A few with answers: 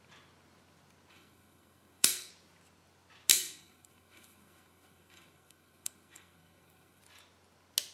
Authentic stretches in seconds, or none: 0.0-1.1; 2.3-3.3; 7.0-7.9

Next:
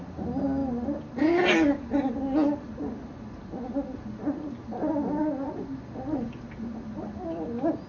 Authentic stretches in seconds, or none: 0.0-7.9

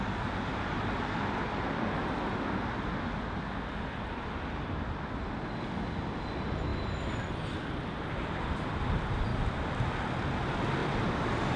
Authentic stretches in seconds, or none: 0.0-0.5; 1.4-9.3; 9.9-11.6

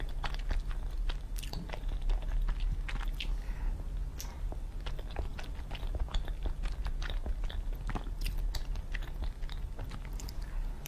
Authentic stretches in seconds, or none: 0.0-10.9

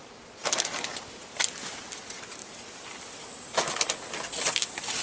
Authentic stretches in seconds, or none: 0.0-5.0

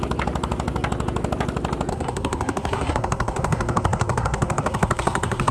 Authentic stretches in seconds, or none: 0.0-1.9